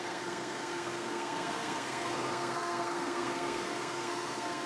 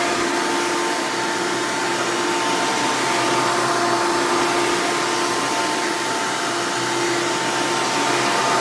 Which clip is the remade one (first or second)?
first